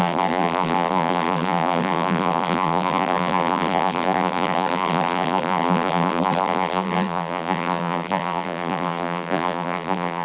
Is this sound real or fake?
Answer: fake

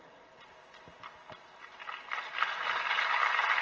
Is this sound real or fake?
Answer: real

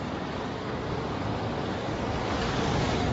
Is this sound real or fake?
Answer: real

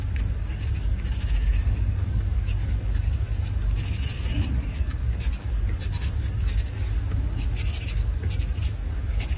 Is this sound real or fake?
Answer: fake